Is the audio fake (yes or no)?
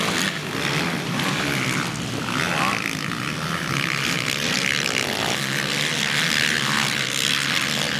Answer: no